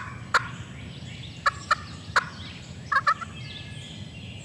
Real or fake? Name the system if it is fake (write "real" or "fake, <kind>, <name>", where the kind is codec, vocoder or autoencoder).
real